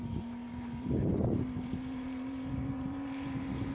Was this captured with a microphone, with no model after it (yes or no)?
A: no